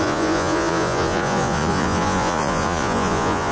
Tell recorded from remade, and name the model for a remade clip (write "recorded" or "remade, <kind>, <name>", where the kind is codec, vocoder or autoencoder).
remade, vocoder, Vocos